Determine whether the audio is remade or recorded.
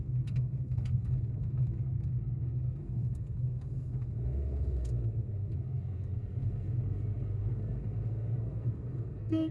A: remade